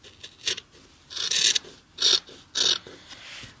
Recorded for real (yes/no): yes